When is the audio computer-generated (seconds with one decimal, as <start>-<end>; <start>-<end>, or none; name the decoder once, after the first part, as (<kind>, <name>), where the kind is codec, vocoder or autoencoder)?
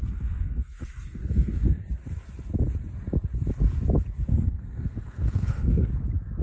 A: 0.0-1.8 (codec, SNAC); 4.3-5.9